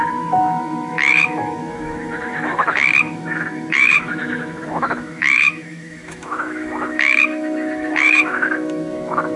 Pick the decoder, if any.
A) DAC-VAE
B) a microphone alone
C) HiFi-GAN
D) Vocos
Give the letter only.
A